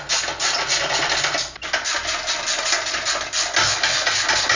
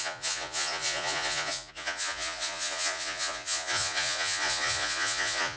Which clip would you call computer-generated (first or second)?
second